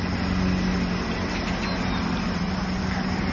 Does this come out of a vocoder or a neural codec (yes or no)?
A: no